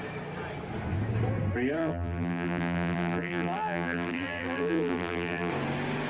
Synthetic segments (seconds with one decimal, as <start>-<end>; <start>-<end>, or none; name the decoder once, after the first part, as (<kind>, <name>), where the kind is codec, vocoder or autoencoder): 1.8-5.5 (vocoder, BigVGAN v2)